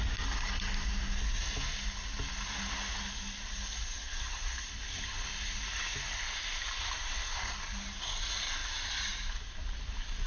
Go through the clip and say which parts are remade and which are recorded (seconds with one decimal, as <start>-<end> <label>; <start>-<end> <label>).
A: 0.0-8.6 recorded; 8.6-10.3 remade